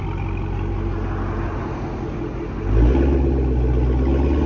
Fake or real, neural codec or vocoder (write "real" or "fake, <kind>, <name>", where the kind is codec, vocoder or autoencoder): real